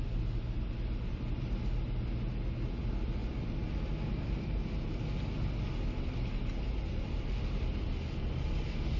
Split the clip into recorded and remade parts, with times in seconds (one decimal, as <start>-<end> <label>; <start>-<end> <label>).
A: 0.0-9.0 recorded